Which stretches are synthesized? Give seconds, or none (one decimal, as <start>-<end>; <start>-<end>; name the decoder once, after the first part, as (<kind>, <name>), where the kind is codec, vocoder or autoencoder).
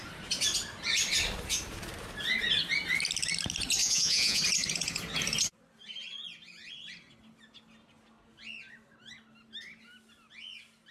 3.8-4.4 (vocoder, Vocos)